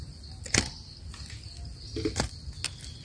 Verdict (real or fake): real